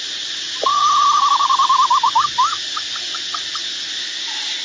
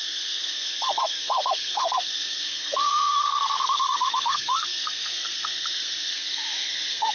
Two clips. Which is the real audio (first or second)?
first